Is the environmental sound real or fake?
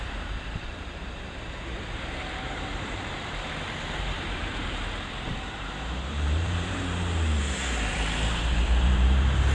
fake